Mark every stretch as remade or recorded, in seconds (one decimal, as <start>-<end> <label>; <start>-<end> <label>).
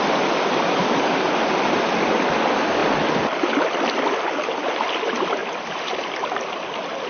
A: 0.0-7.1 recorded